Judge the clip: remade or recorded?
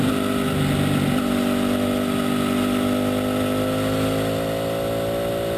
recorded